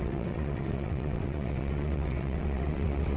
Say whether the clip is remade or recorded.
remade